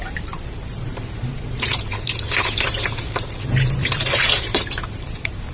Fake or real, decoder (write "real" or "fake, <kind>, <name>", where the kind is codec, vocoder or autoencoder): fake, vocoder, BigVGAN v2